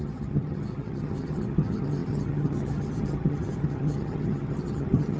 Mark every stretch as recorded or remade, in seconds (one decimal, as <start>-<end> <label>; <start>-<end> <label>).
0.0-5.2 remade